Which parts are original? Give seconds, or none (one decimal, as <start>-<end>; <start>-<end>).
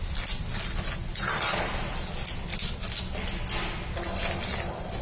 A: 0.0-5.0